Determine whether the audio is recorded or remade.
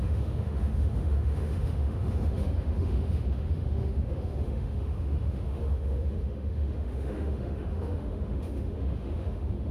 remade